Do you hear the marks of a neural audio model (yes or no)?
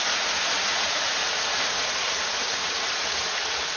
yes